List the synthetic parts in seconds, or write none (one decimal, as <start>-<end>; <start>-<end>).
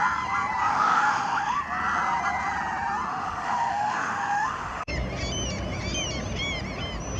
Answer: 0.7-1.6; 3.1-4.9